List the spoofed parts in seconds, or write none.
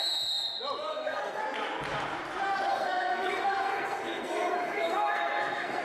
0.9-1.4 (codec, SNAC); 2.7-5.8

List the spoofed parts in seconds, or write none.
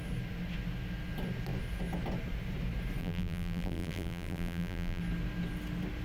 3.0-5.0 (vocoder, BigVGAN v2)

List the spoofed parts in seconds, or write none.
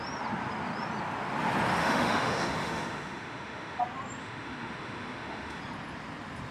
1.8-3.8 (autoencoder, DAC-VAE); 4.2-5.6